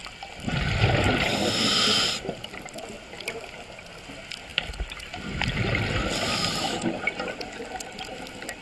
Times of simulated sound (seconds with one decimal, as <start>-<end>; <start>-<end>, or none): none